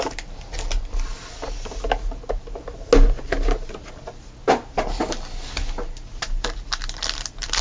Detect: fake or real real